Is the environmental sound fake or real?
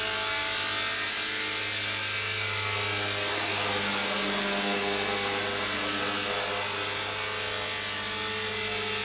real